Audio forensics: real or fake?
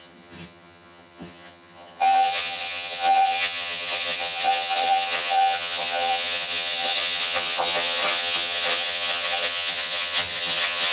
fake